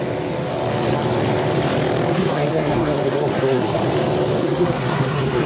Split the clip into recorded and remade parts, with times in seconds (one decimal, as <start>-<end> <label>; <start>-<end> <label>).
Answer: 0.0-2.1 recorded; 2.1-3.8 remade; 3.8-4.4 recorded; 4.4-5.5 remade